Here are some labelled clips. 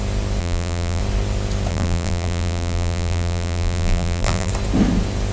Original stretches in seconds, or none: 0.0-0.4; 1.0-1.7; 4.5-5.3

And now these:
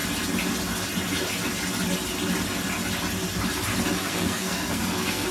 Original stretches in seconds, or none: 0.0-4.0

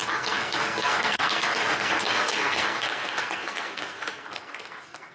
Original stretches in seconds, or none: none

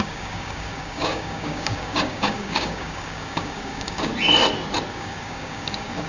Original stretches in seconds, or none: 4.1-4.9

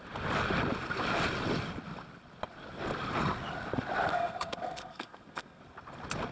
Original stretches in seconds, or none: 0.0-4.1; 5.6-6.3

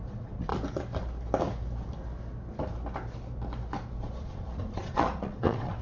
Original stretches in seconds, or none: 0.5-4.0

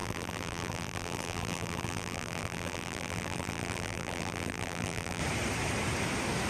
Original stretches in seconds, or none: 5.2-6.5